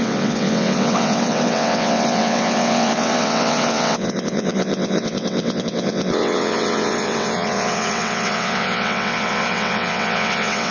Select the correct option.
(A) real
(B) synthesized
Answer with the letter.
B